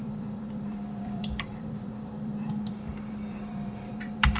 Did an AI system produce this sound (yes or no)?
yes